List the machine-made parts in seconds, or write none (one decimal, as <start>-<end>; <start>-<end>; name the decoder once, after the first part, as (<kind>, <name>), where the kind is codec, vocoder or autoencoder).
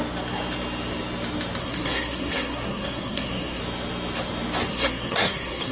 1.6-3.6 (codec, SNAC); 4.7-5.7